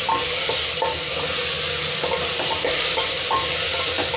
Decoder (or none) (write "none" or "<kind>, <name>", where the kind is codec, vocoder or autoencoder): none